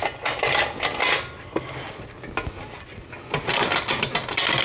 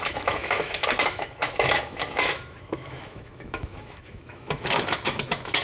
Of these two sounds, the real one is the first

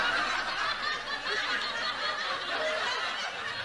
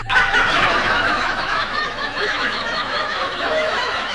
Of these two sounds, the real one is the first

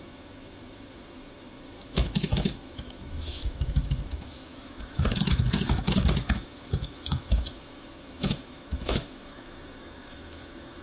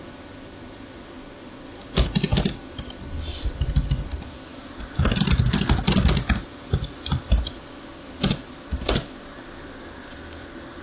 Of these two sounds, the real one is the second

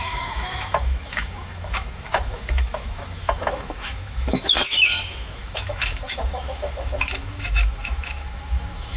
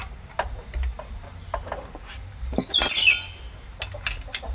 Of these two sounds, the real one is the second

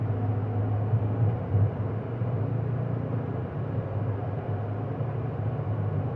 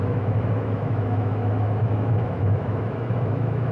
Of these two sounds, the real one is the first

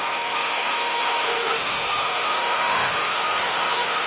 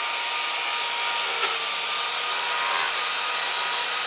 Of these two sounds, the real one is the second